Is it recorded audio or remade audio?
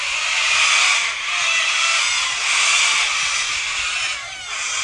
recorded